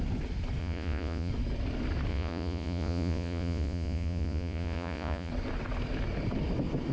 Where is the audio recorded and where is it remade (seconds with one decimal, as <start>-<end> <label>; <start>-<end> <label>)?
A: 0.0-0.6 recorded; 0.6-1.3 remade; 1.3-2.1 recorded; 2.1-5.3 remade; 5.3-6.9 recorded